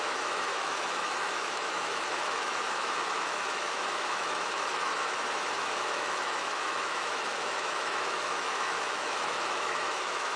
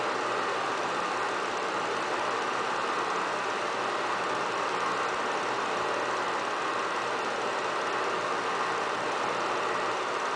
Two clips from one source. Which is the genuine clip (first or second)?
second